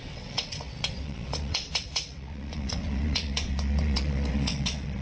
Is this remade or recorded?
remade